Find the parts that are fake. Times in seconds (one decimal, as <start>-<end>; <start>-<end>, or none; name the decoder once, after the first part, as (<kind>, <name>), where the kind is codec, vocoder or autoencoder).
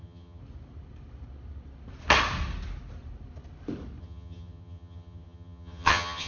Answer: 0.0-0.4 (vocoder, HiFi-GAN); 4.0-6.3